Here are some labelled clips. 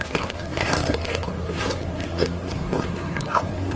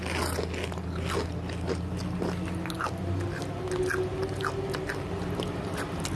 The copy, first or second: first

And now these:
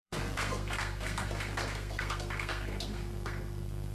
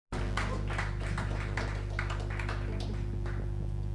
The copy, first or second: first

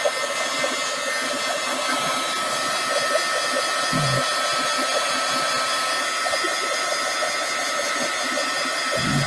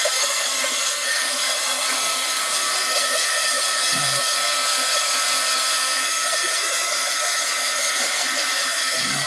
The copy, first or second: second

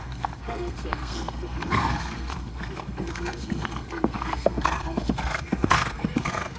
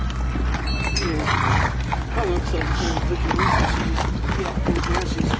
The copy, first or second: first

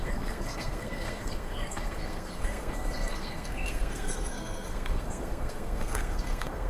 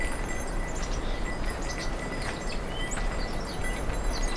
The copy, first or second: first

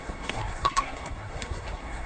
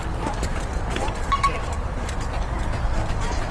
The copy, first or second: first